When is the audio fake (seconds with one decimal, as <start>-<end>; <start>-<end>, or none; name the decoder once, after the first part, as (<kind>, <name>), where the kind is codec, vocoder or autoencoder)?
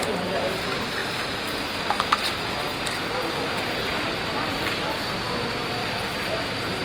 3.9-4.8 (vocoder, BigVGAN v2); 5.8-6.8